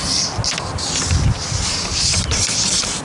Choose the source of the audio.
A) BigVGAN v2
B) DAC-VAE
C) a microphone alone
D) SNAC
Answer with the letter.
C